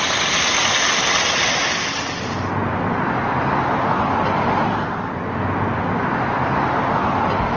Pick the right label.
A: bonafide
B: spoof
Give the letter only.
A